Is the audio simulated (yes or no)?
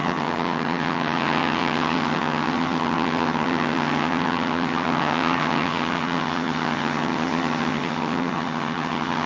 yes